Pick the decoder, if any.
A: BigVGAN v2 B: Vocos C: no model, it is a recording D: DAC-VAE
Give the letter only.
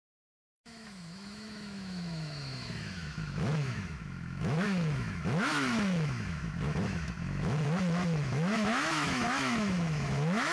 D